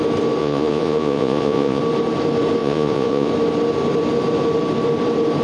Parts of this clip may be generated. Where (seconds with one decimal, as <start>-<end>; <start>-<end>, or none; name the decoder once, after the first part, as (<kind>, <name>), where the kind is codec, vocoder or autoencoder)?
0.4-1.8 (vocoder, Vocos); 2.6-3.3